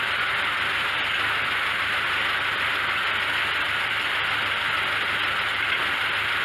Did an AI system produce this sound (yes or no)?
no